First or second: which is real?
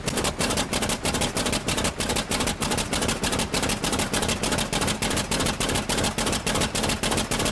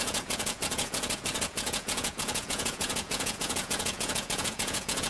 first